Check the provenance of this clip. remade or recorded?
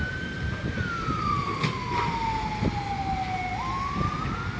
recorded